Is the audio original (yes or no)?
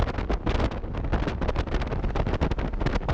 yes